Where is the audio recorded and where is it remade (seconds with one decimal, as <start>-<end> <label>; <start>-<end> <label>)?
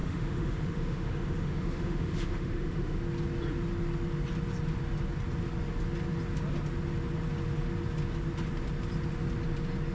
0.0-3.0 remade; 3.0-9.9 recorded